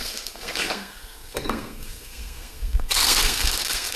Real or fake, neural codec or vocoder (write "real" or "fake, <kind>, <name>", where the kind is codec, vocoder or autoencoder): fake, codec, SNAC